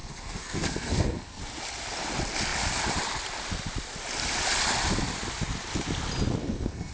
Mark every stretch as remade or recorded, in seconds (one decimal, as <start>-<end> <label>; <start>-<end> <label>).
0.0-1.4 remade; 1.4-6.4 recorded; 6.4-6.9 remade

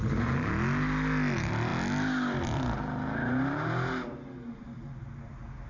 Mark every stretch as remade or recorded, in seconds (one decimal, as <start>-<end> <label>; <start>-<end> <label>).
0.0-5.7 recorded

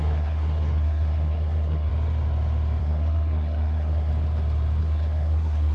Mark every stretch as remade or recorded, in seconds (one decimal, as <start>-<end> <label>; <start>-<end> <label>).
0.0-1.9 remade; 1.9-2.8 recorded; 2.8-4.1 remade; 4.1-4.8 recorded; 4.8-5.7 remade

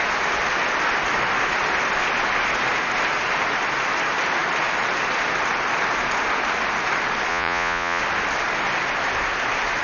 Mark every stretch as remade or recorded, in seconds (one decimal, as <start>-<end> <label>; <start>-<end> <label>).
0.0-7.3 recorded; 7.3-8.0 remade; 8.0-9.8 recorded

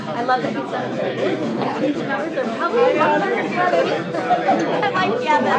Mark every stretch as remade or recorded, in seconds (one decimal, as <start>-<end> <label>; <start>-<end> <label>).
0.0-1.5 recorded; 1.5-2.0 remade; 2.0-5.6 recorded

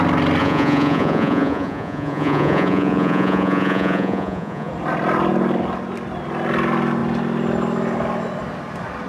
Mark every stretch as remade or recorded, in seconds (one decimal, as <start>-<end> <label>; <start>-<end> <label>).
0.0-0.4 recorded; 0.4-4.7 remade; 4.7-9.1 recorded

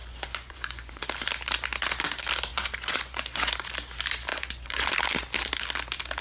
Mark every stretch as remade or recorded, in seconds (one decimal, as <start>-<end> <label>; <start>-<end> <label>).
0.0-1.0 remade; 1.0-2.5 recorded; 2.5-3.5 remade; 3.5-4.3 recorded; 4.3-4.9 remade; 4.9-6.2 recorded